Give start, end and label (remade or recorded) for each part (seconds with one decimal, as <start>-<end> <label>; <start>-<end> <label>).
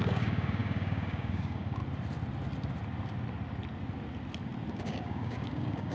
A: 0.0-1.8 remade; 1.8-4.7 recorded; 4.7-5.9 remade